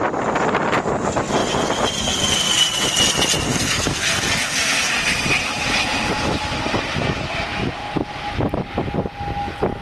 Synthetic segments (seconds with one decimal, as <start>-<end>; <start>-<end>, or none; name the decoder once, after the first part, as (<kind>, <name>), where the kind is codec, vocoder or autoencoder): 3.5-4.9 (codec, SNAC)